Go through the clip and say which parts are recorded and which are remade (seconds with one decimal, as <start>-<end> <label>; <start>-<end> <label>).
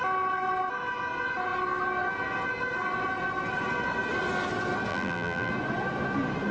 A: 0.0-4.9 recorded; 4.9-5.5 remade; 5.5-6.5 recorded